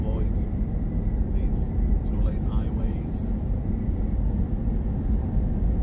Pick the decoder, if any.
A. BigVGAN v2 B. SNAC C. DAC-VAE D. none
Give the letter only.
A